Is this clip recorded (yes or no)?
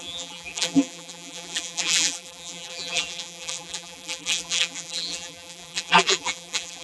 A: no